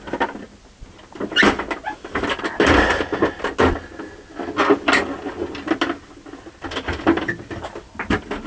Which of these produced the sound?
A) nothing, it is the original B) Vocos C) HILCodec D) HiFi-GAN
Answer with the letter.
A